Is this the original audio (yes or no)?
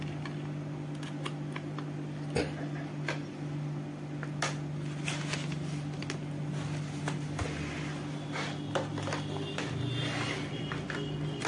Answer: yes